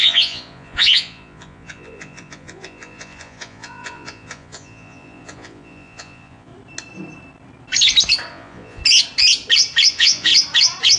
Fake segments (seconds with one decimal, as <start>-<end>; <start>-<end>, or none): 0.0-6.5; 8.3-8.8; 9.9-10.3